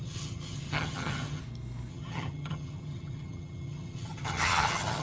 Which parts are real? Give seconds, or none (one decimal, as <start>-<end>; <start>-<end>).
1.4-1.9